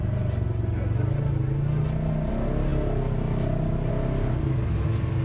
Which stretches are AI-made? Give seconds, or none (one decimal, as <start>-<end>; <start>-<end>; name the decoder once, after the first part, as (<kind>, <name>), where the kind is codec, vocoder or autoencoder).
none